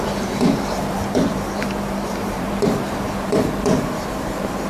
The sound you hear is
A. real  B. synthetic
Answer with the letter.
B